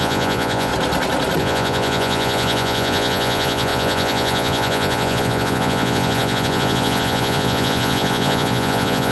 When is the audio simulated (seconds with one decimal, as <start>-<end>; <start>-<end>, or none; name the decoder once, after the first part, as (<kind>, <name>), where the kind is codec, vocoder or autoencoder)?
0.0-0.7 (vocoder, Vocos); 1.4-9.1